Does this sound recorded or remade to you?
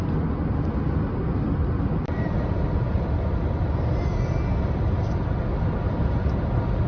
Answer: recorded